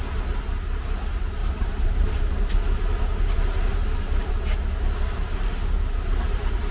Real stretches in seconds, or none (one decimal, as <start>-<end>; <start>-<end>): 0.0-1.4; 2.5-3.8; 4.3-6.7